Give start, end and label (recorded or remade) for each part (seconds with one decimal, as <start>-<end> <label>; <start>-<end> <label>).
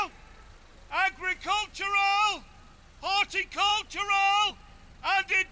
0.0-5.5 recorded